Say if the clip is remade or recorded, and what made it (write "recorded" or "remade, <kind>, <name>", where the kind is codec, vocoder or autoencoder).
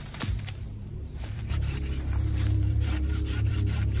remade, vocoder, BigVGAN v2